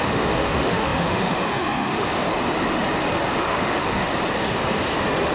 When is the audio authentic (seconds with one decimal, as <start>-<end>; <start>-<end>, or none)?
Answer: 2.1-3.4; 4.1-5.3